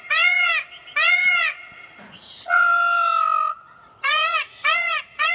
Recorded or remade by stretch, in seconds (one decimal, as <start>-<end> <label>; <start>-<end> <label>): 0.0-0.5 remade; 0.5-1.0 recorded; 1.0-2.6 remade; 2.6-3.5 recorded; 3.5-5.3 remade